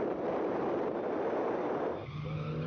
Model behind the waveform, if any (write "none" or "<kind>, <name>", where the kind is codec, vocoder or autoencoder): none